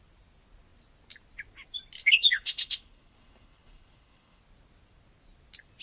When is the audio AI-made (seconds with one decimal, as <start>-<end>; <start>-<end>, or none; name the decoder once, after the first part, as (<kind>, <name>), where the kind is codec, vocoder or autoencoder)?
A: 2.0-4.4 (codec, HILCodec)